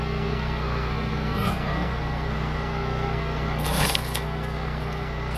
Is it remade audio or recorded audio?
remade